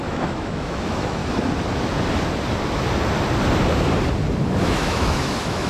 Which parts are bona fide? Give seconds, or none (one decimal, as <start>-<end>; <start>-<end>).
1.2-4.6